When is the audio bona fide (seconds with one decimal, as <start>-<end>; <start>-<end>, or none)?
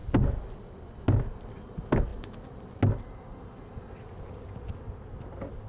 0.0-5.7